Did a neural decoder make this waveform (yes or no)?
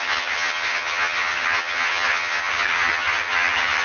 yes